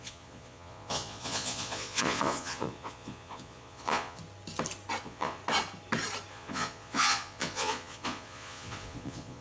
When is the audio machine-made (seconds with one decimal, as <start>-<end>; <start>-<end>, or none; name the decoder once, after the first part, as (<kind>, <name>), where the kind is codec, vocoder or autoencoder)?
0.0-4.2 (vocoder, Vocos); 5.0-5.4; 6.3-9.4